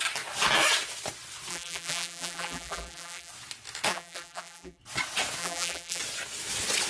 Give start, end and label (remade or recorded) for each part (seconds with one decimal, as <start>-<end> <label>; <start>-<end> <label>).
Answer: 0.0-1.5 recorded; 1.5-3.3 remade; 3.3-3.9 recorded; 3.9-4.8 remade; 4.8-5.4 recorded; 5.4-6.0 remade; 6.0-6.9 recorded